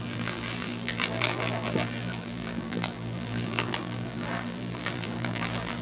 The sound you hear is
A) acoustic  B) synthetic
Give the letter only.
B